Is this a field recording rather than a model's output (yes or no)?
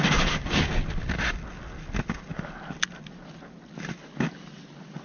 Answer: yes